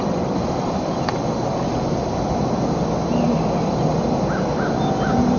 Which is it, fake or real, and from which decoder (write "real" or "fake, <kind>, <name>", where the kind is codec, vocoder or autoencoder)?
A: real